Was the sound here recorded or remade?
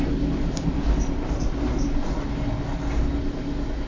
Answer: recorded